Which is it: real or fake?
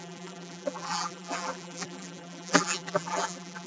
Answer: fake